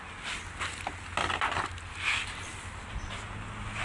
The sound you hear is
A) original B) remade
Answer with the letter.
A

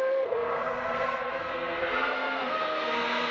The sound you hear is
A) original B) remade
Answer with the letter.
B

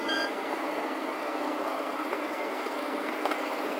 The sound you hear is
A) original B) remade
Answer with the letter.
B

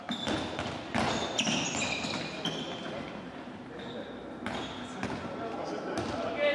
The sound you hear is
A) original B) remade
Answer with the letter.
A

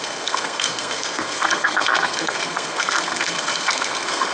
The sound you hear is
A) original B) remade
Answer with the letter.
B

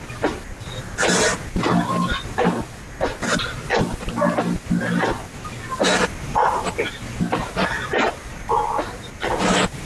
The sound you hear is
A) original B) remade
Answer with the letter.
A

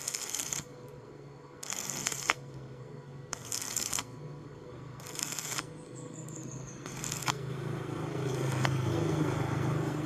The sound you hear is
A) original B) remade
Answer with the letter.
B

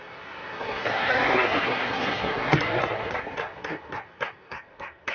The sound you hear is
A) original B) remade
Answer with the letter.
B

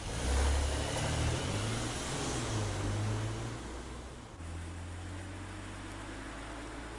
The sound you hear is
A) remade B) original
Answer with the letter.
B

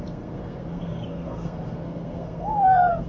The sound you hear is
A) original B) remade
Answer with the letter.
B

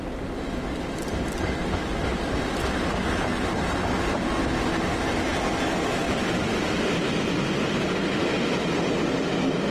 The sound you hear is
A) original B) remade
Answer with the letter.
A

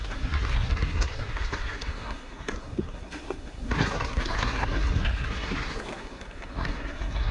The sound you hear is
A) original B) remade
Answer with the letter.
B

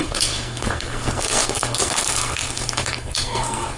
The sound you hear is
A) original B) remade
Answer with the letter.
B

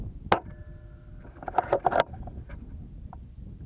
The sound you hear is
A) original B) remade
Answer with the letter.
A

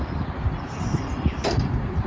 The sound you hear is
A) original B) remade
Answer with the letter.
A